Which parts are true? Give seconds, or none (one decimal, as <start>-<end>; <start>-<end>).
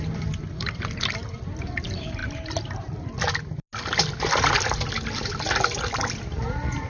0.0-6.9